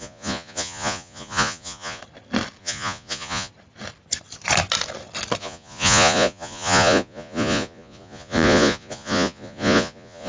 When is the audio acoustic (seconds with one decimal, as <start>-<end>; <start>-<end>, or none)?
2.0-2.6; 3.5-5.4